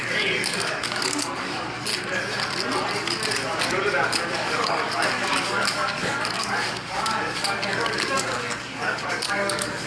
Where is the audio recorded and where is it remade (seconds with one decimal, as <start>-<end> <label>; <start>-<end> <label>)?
0.0-1.9 remade; 1.9-3.6 recorded; 3.6-9.9 remade